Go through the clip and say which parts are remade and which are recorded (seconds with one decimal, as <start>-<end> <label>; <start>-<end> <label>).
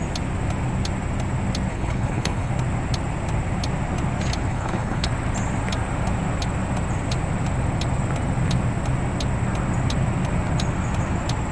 0.0-1.7 recorded; 1.7-2.5 remade; 2.5-4.5 recorded; 4.5-5.1 remade; 5.1-11.5 recorded